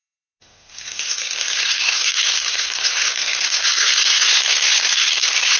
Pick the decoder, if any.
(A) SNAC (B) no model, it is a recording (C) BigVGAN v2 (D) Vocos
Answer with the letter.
A